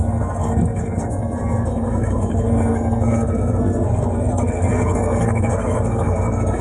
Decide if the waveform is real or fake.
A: fake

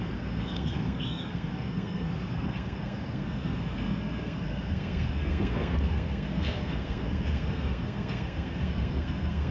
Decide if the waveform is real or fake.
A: fake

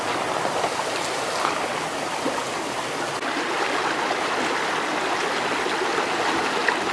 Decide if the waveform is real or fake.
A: real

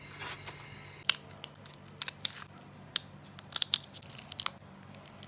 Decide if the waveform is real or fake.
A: real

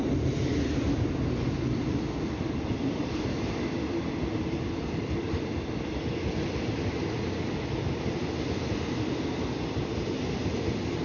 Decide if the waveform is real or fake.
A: real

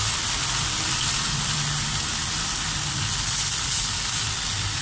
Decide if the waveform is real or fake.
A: real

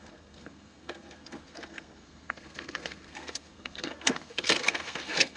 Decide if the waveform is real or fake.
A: fake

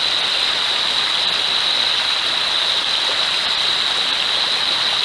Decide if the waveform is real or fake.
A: real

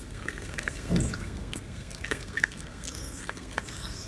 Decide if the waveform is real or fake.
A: fake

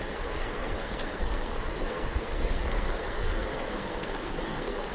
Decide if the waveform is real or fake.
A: fake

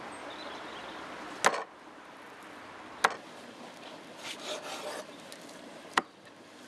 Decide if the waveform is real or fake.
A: real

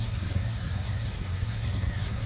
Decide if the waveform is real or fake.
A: fake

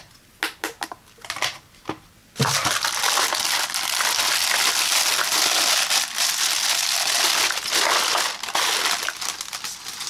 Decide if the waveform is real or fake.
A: real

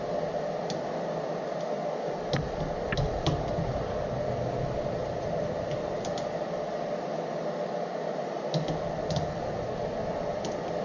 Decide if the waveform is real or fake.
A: real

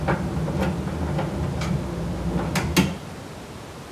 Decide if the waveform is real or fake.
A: real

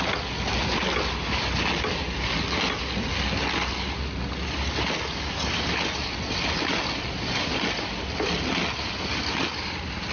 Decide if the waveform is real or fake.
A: real